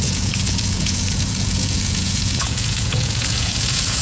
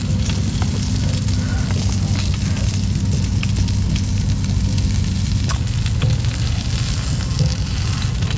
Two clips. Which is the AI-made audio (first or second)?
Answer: first